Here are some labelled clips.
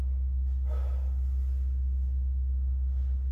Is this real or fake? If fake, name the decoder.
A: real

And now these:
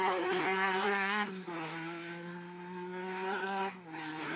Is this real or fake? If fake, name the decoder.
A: fake, codec, SNAC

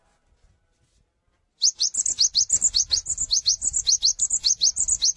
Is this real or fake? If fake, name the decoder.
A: real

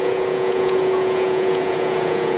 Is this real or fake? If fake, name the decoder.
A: fake, vocoder, Vocos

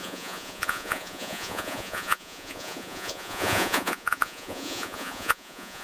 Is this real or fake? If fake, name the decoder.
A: fake, vocoder, Vocos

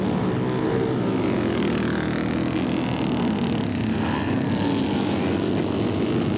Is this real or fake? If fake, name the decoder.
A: real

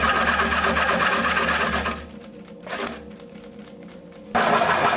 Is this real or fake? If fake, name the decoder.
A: real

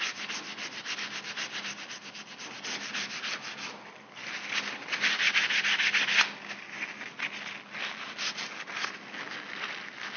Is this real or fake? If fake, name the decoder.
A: real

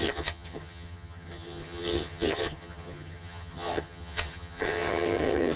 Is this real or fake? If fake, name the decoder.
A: fake, vocoder, HiFi-GAN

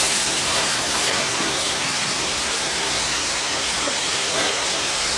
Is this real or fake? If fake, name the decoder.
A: fake, codec, SNAC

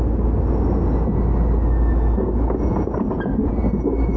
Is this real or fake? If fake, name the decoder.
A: real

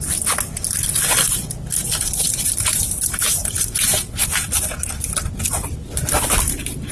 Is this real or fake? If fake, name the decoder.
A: real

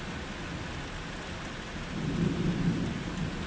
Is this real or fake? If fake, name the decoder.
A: real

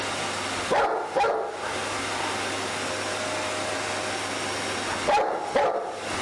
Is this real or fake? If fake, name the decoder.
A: real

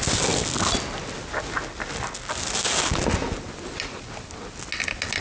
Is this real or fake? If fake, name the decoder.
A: real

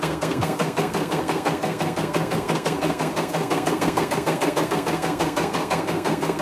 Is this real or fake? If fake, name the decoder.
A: fake, codec, SNAC